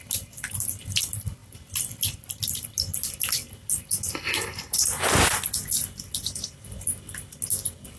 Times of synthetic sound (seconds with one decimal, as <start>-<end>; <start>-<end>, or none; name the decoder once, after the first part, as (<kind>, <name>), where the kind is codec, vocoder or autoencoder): none